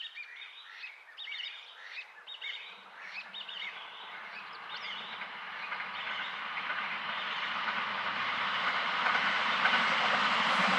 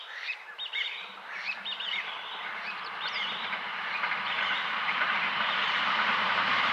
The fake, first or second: second